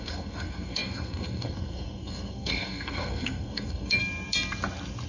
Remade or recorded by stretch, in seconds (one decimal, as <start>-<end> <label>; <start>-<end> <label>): 0.0-4.0 remade; 4.0-5.1 recorded